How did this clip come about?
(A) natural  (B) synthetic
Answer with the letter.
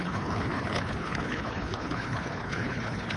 B